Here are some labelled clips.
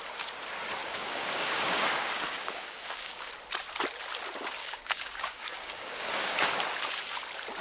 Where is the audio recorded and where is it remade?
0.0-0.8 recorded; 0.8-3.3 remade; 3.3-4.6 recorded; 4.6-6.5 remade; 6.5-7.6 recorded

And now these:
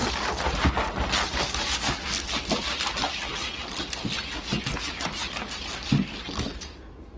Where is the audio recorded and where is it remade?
0.0-7.2 recorded

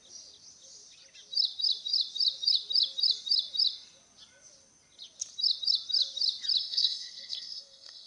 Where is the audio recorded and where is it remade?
0.0-6.6 recorded; 6.6-8.1 remade

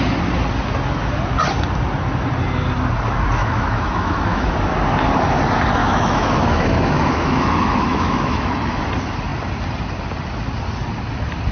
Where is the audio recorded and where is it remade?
0.0-3.4 recorded; 3.4-4.5 remade; 4.5-5.8 recorded; 5.8-8.8 remade; 8.8-11.5 recorded

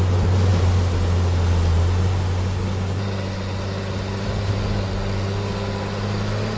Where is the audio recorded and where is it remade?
0.0-6.6 recorded

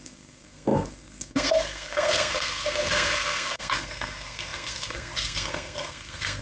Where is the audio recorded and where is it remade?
0.0-6.4 remade

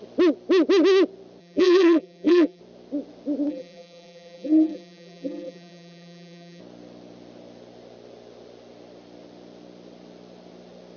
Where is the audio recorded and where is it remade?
0.0-1.4 recorded; 1.4-2.6 remade; 2.6-3.5 recorded; 3.5-6.6 remade; 6.6-11.0 recorded